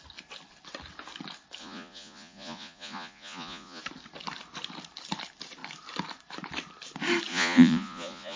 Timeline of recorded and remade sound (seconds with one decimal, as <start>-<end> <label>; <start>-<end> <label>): 0.0-1.6 recorded; 1.6-3.8 remade; 3.8-7.3 recorded; 7.3-8.4 remade